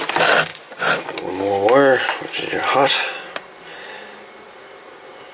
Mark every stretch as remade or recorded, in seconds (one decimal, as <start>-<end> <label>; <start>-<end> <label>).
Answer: 0.0-0.5 recorded; 0.5-1.3 remade; 1.3-5.3 recorded